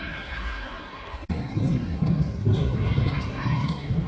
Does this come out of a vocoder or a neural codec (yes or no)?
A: yes